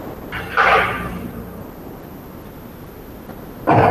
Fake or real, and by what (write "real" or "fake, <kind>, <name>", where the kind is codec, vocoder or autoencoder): real